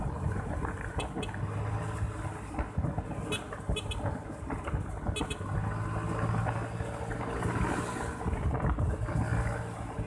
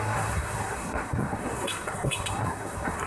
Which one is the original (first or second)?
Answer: first